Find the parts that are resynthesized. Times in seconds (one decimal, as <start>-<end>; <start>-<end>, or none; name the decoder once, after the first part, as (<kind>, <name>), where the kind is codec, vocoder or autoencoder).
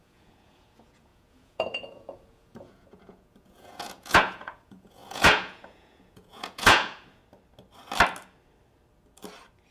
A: 0.0-7.2 (vocoder, Vocos)